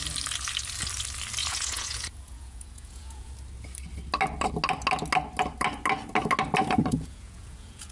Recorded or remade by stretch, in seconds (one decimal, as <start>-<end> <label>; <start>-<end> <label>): 0.0-1.4 recorded; 1.4-3.3 remade; 3.3-6.9 recorded; 6.9-7.9 remade